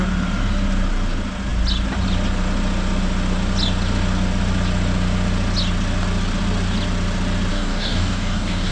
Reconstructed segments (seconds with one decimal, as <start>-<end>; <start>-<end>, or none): 7.5-8.7